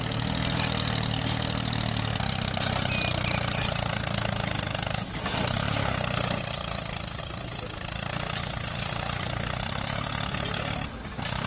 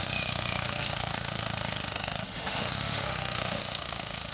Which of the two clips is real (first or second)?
first